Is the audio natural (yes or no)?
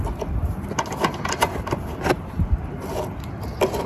yes